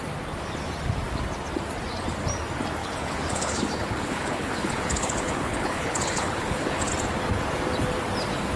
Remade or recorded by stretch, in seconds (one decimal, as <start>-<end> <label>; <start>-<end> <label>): 0.0-2.8 recorded; 2.8-6.9 remade; 6.9-8.6 recorded